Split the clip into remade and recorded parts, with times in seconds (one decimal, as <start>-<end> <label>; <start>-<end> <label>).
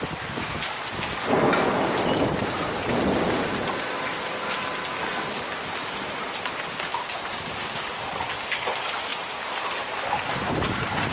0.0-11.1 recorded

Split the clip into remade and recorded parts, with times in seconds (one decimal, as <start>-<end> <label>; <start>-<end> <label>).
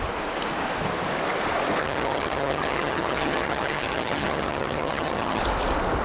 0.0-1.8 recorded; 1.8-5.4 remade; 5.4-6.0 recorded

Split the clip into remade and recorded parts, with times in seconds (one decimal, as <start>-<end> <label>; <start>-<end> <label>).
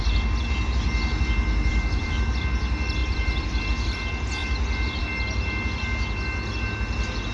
0.0-1.7 recorded; 1.7-2.4 remade; 2.4-3.0 recorded; 3.0-3.6 remade; 3.6-4.4 recorded; 4.4-5.0 remade; 5.0-7.3 recorded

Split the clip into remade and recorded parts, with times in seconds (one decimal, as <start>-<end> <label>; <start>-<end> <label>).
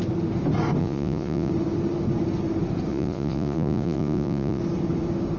0.0-0.8 recorded; 0.8-1.5 remade; 1.5-2.9 recorded; 2.9-4.6 remade; 4.6-5.4 recorded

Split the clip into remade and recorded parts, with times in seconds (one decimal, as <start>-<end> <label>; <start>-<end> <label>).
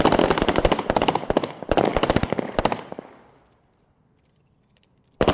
0.0-1.9 remade; 1.9-3.8 recorded; 3.8-5.3 remade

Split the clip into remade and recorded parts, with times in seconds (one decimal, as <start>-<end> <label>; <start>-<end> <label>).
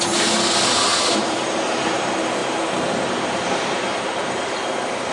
0.0-0.9 recorded; 0.9-2.0 remade; 2.0-2.4 recorded; 2.4-4.3 remade; 4.3-5.1 recorded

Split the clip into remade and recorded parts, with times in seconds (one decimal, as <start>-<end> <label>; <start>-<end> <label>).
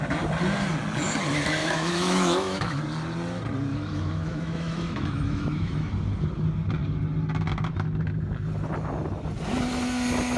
0.0-1.6 recorded; 1.6-2.8 remade; 2.8-3.7 recorded; 3.7-5.9 remade; 5.9-10.4 recorded